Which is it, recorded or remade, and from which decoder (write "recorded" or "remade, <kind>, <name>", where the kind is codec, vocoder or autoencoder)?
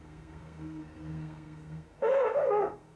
remade, codec, SNAC